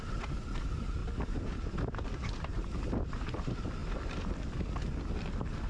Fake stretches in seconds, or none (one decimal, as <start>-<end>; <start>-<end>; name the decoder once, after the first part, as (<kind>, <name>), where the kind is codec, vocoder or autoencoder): 0.0-1.0 (vocoder, BigVGAN v2); 3.1-3.8; 5.2-5.7